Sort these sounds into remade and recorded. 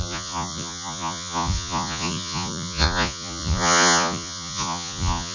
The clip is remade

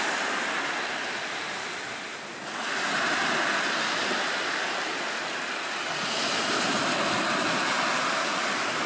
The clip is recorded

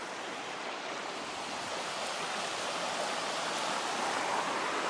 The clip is recorded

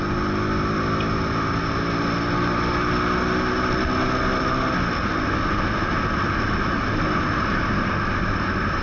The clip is recorded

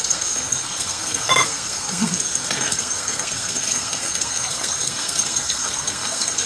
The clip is remade